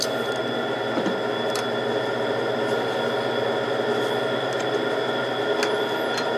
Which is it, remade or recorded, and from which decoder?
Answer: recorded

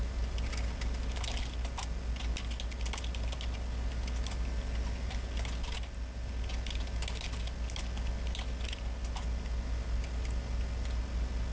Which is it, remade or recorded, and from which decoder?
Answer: recorded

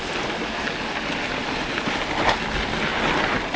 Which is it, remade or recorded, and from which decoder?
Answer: recorded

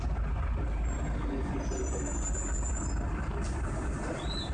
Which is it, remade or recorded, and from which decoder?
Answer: recorded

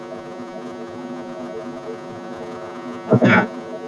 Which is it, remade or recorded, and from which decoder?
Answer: remade, vocoder, Vocos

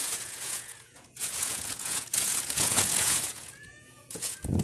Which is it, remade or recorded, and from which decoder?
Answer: remade, vocoder, Vocos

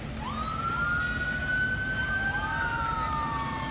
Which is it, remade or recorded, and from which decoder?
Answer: recorded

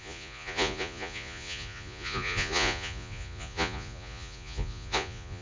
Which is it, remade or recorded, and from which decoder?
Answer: remade, vocoder, Vocos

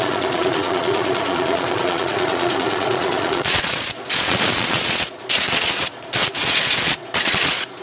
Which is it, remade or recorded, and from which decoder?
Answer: remade, vocoder, Vocos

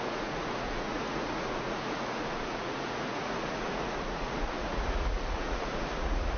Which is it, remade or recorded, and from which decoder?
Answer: remade, vocoder, Vocos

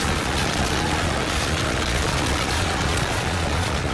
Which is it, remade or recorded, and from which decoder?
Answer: remade, vocoder, Vocos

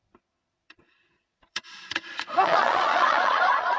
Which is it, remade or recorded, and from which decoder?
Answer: remade, vocoder, Vocos